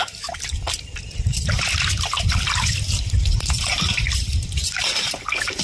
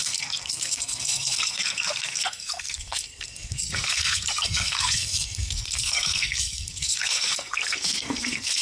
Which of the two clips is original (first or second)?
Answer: first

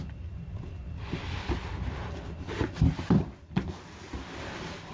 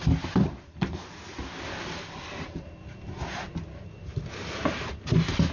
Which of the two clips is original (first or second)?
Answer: second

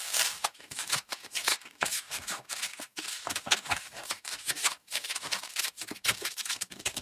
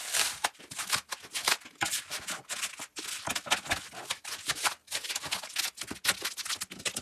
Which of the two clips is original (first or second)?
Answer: second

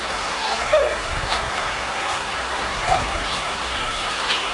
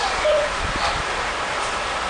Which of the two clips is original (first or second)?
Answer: second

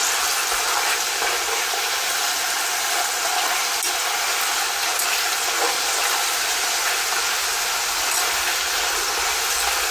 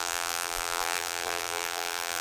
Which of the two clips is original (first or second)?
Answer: first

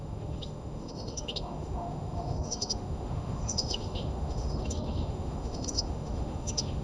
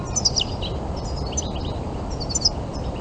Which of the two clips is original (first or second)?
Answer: second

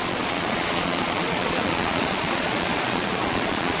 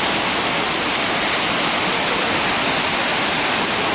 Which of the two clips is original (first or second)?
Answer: second